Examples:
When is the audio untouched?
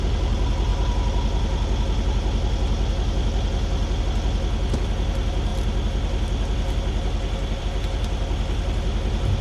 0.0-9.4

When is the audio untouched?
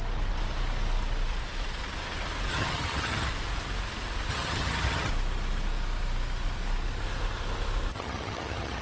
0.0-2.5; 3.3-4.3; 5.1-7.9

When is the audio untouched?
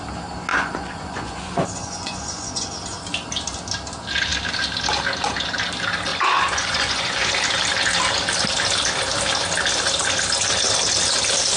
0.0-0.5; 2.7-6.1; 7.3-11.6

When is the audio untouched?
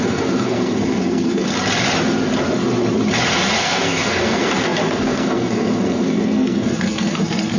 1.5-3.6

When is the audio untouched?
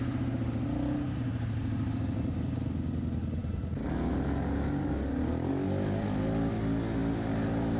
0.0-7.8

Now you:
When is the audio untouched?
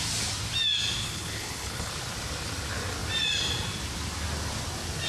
0.0-1.0; 1.9-5.1